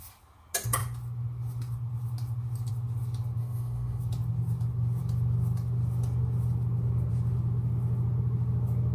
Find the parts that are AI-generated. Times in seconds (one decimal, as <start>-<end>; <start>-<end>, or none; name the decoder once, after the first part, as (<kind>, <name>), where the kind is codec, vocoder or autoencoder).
3.4-4.0 (autoencoder, DAC-VAE)